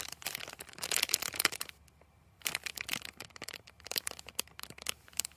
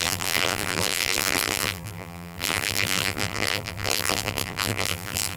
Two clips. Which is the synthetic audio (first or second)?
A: second